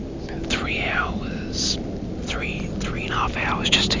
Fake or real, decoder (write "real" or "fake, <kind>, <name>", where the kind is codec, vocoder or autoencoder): real